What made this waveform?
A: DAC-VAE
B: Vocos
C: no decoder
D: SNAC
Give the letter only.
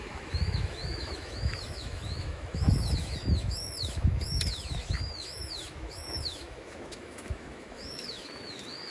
A